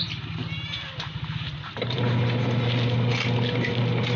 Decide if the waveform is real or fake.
real